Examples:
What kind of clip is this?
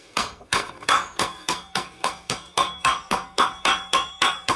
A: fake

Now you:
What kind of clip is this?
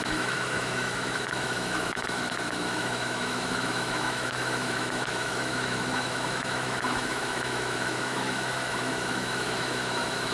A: fake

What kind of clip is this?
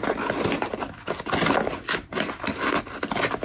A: real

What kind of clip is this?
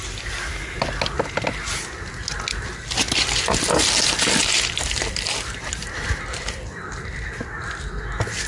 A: real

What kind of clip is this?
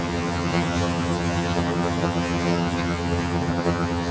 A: fake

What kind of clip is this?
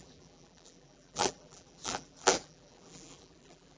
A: fake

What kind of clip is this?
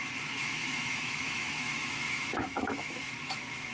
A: fake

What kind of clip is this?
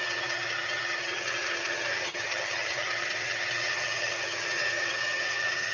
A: fake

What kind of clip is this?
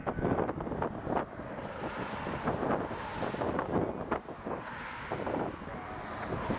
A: real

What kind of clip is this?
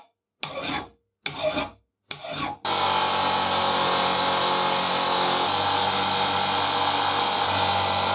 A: real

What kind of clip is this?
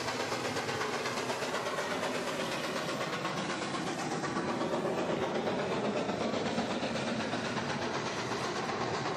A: real